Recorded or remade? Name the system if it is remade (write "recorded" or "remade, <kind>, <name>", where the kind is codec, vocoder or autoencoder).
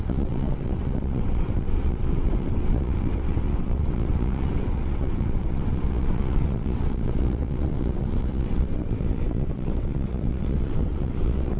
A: remade, vocoder, WaveNeXt